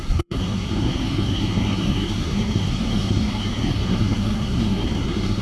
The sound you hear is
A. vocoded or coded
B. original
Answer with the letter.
A